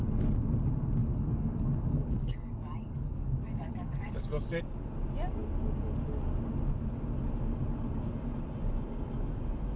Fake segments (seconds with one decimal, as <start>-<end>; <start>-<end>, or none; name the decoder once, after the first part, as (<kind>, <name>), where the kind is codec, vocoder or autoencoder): 1.0-4.6 (codec, DAC)